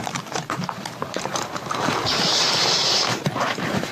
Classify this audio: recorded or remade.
remade